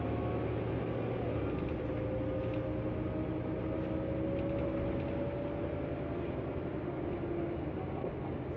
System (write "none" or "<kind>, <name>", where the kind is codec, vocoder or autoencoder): none